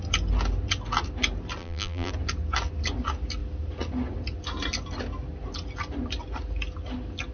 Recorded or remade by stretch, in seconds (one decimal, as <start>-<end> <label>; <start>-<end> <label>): 0.0-1.6 recorded; 1.6-2.1 remade; 2.1-7.3 recorded